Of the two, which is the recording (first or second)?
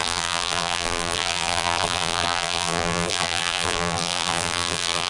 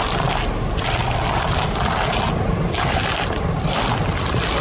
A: second